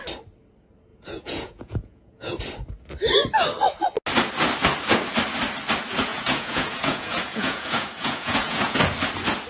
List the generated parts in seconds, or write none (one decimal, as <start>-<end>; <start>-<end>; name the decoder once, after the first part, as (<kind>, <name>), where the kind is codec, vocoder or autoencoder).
0.9-2.4 (vocoder, Vocos); 6.1-8.8